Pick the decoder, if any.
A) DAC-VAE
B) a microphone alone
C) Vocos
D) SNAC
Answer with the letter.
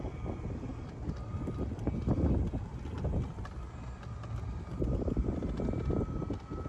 B